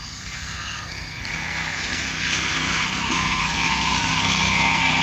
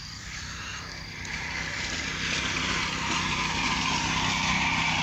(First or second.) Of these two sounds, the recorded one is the second